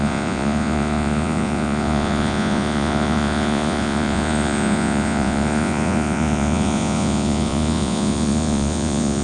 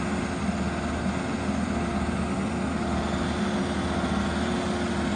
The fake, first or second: first